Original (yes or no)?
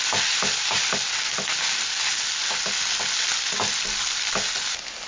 yes